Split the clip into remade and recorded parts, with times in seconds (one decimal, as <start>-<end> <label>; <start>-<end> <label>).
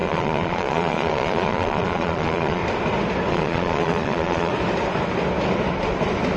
0.0-2.6 remade; 2.6-3.3 recorded; 3.3-4.5 remade; 4.5-6.4 recorded